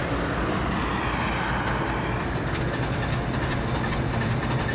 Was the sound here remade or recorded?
recorded